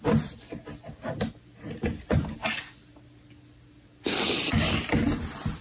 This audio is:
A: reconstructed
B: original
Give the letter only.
B